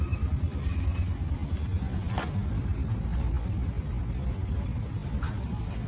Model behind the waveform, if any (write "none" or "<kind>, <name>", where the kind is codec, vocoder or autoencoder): none